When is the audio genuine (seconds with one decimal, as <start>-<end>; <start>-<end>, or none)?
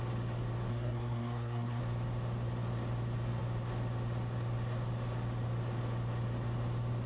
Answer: 0.0-0.7; 1.8-7.1